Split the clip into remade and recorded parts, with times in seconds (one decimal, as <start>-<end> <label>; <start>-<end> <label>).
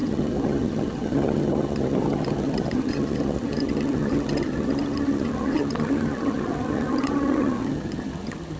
0.0-8.6 remade